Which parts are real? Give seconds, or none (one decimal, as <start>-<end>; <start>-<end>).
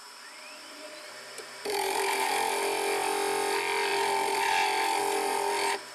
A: 0.0-0.6; 2.3-5.9